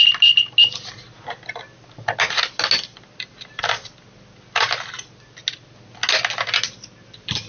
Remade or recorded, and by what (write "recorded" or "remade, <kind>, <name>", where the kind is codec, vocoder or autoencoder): recorded